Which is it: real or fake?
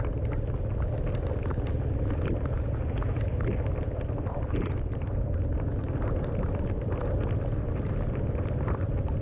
fake